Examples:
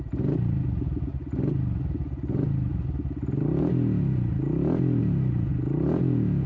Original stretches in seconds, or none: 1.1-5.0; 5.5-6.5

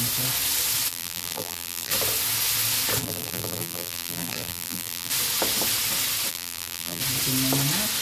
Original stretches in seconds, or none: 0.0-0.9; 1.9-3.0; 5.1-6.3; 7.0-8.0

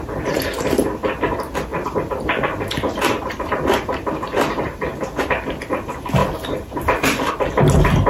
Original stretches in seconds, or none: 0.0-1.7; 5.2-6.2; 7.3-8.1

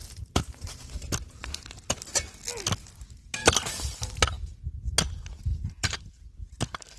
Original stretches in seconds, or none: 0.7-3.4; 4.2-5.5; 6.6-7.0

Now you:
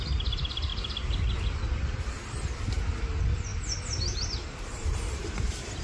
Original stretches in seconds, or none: 0.0-3.5